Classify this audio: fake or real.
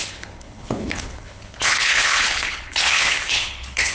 fake